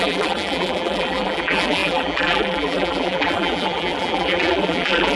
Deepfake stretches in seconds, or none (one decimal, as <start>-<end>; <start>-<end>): 0.0-5.2